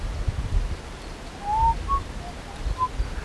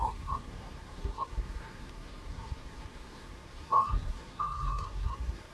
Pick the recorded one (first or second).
first